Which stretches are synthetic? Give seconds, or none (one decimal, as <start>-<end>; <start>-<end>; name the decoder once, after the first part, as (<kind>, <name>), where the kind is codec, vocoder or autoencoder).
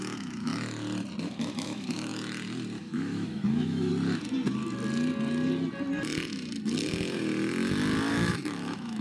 0.0-0.5 (autoencoder, DAC-VAE); 1.2-2.1; 2.8-3.9; 8.1-9.0